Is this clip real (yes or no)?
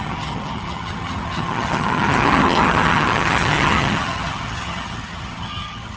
no